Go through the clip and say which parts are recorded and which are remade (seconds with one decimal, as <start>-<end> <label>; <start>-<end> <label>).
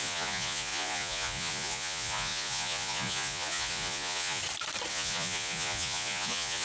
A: 0.0-4.4 remade; 4.4-4.9 recorded; 4.9-6.6 remade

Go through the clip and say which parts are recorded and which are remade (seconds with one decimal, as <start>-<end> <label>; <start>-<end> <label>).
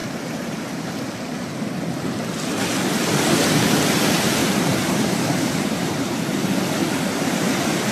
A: 0.0-4.4 recorded; 4.4-6.2 remade; 6.2-7.9 recorded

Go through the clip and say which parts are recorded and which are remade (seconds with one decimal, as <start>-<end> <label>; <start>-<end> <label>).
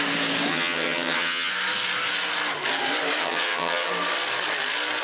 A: 0.0-0.5 recorded; 0.5-1.5 remade; 1.5-3.2 recorded; 3.2-3.9 remade; 3.9-5.0 recorded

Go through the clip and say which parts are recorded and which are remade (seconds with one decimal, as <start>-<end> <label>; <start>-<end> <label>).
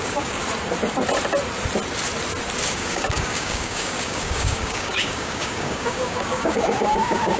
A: 0.0-0.4 remade; 0.4-2.7 recorded; 2.7-7.4 remade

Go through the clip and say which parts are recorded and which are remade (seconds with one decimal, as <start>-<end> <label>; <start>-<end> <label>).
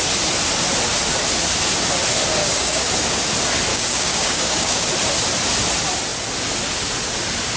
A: 0.0-2.4 recorded; 2.4-2.9 remade; 2.9-3.7 recorded; 3.7-4.9 remade; 4.9-7.6 recorded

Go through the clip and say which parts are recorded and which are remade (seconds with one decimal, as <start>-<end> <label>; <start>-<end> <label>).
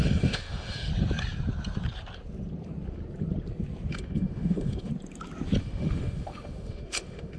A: 0.0-0.9 remade; 0.9-3.9 recorded; 3.9-4.9 remade; 4.9-5.6 recorded; 5.6-7.4 remade